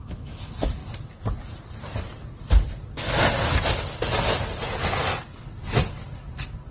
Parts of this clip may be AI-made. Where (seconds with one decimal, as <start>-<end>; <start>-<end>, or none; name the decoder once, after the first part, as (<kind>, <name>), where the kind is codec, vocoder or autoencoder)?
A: 0.8-1.7 (vocoder, BigVGAN v2)